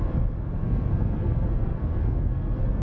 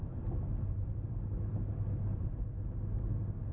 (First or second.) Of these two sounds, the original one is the second